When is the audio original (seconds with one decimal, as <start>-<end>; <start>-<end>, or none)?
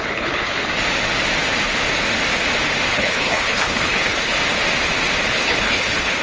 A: 0.7-2.9; 4.3-5.3